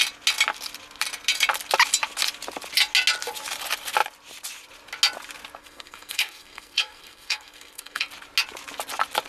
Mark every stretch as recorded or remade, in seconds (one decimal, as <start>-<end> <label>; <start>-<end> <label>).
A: 0.0-5.6 recorded; 5.6-8.1 remade; 8.1-9.3 recorded